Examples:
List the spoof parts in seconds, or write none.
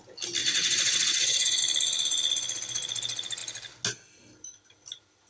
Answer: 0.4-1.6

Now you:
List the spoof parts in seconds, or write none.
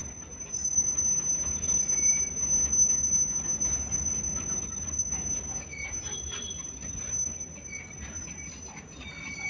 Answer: none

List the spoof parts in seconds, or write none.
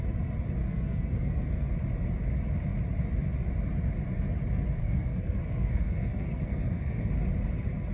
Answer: 0.6-1.7; 4.8-7.1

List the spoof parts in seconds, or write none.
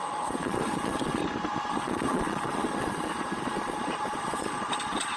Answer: 0.0-1.2; 1.7-5.2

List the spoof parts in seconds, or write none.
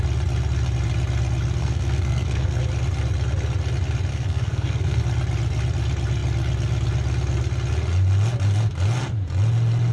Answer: 1.6-2.6; 4.1-5.0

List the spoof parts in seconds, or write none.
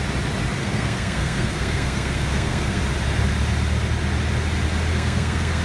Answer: 0.6-2.8; 4.9-5.6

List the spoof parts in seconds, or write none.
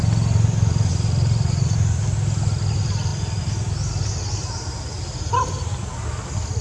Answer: none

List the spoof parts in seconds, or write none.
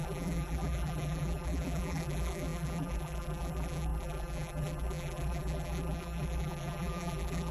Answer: 0.0-7.5